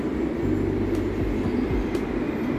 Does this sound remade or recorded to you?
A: recorded